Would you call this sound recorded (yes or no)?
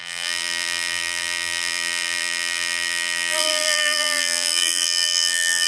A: no